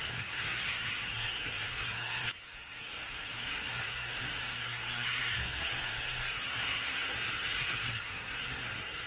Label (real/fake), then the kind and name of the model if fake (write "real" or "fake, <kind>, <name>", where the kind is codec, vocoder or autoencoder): fake, codec, SNAC